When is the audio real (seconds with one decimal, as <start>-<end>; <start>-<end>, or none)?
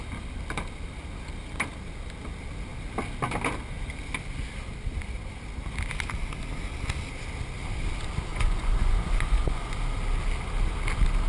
0.0-8.3; 9.7-11.3